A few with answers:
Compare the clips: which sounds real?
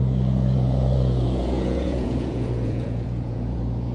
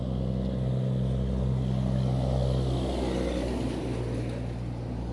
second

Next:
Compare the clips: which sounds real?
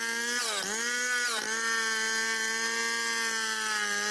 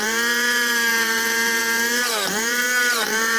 first